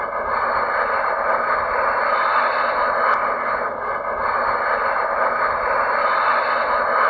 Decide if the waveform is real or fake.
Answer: real